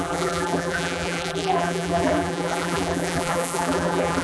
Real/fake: fake